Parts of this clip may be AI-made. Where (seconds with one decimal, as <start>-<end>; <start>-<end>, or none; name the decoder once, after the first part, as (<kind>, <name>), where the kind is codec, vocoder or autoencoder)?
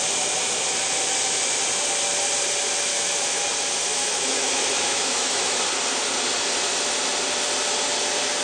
2.9-3.4 (autoencoder, DAC-VAE); 3.9-5.6